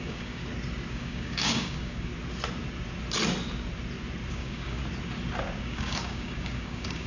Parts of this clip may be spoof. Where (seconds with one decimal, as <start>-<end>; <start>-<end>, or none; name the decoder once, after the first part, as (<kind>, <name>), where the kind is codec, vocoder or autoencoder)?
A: 0.0-0.4 (codec, DAC); 0.9-2.1; 4.3-4.8; 5.6-7.1